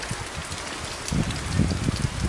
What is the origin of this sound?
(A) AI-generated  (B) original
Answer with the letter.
B